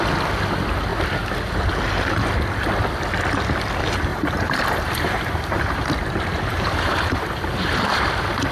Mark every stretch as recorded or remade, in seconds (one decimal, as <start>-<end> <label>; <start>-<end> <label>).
0.0-4.1 recorded; 4.1-5.6 remade; 5.6-6.5 recorded; 6.5-8.0 remade; 8.0-8.5 recorded